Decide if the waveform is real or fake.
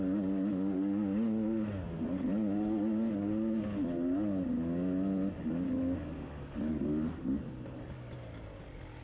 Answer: real